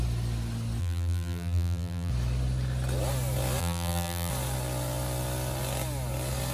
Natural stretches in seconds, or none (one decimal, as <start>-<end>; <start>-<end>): 0.0-0.8; 2.1-3.6; 4.3-6.5